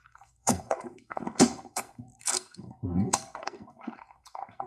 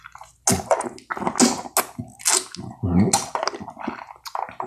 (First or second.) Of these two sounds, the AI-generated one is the first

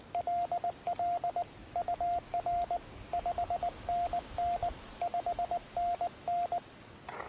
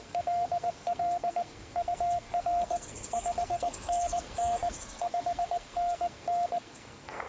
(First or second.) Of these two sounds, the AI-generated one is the second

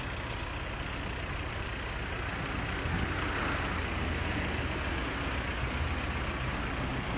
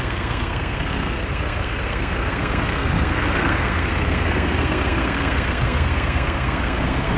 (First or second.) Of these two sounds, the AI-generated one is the second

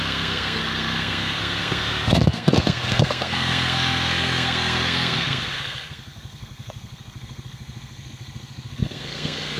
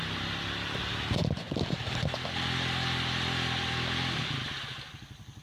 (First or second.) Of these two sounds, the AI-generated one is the first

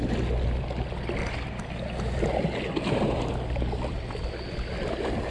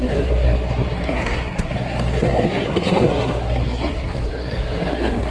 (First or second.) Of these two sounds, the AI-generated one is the second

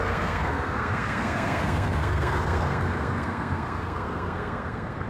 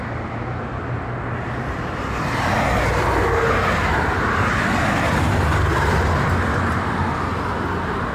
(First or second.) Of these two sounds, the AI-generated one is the first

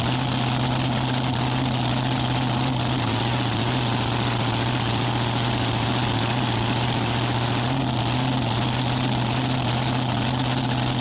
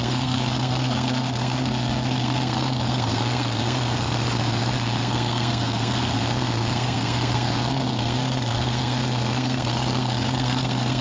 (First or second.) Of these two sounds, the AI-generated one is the second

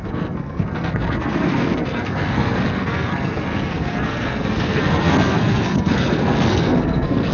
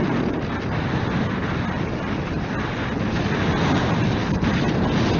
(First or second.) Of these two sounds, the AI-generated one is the first